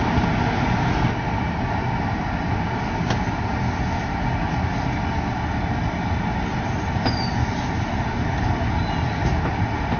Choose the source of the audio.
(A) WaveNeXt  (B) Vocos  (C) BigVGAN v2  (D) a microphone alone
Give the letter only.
D